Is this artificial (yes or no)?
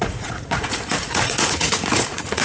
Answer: yes